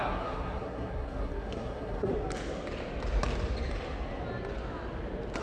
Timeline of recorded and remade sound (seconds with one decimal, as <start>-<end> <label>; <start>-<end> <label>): 0.0-2.1 remade; 2.1-5.4 recorded